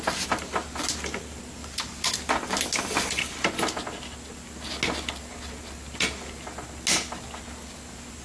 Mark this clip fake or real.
real